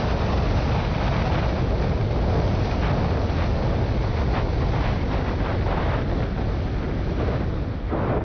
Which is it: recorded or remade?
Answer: recorded